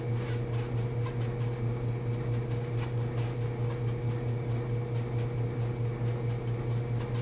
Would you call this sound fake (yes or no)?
no